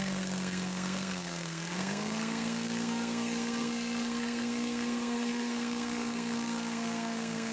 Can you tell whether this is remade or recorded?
remade